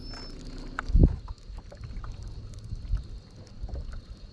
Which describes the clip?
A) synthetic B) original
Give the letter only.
B